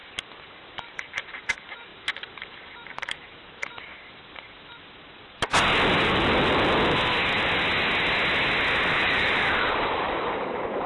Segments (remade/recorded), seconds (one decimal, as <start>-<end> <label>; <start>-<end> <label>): 0.0-0.6 recorded; 0.6-1.9 remade; 1.9-2.9 recorded; 2.9-3.9 remade; 3.9-8.9 recorded; 8.9-10.9 remade